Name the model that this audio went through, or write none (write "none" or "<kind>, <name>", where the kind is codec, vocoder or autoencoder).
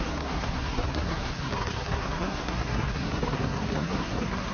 codec, SNAC